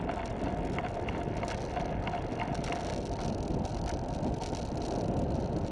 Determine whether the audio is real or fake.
real